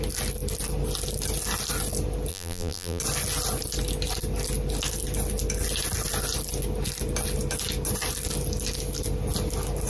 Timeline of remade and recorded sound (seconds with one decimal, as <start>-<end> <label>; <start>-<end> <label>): 0.0-2.3 recorded; 2.3-3.0 remade; 3.0-9.9 recorded

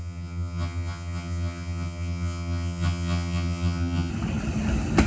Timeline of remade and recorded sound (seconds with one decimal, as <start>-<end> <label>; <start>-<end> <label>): 0.0-4.1 remade; 4.1-5.1 recorded

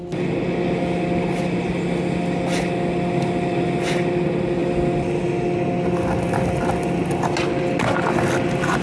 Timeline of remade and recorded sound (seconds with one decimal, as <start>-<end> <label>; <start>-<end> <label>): 0.0-8.8 recorded